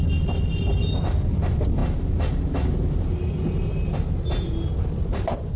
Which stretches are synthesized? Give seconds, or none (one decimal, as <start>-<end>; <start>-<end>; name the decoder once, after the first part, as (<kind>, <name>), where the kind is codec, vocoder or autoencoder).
none